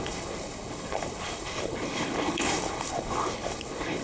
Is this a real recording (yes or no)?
no